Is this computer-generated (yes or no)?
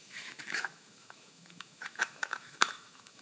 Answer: yes